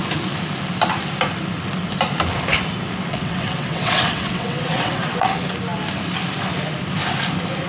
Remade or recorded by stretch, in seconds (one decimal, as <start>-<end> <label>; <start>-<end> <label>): 0.0-3.1 recorded; 3.1-5.3 remade; 5.3-7.7 recorded